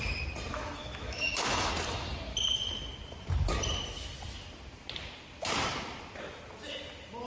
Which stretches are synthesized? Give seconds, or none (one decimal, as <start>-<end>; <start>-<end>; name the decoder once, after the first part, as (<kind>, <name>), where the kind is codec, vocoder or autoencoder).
0.5-1.7 (autoencoder, DAC-VAE)